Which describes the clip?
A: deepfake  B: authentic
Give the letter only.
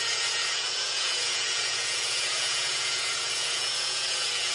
A